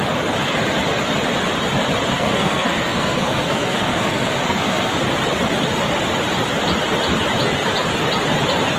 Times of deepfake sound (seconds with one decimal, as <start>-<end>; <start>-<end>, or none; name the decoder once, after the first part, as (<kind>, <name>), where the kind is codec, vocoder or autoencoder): 2.1-4.9 (codec, SNAC)